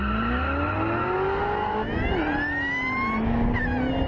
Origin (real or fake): real